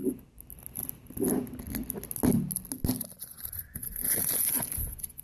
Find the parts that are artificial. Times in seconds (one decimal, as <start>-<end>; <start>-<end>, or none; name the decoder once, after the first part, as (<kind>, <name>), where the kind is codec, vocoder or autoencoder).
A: 3.1-5.2 (vocoder, Vocos)